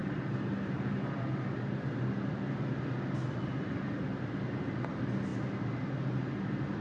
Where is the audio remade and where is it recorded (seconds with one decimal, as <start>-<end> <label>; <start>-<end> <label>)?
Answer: 0.0-6.8 recorded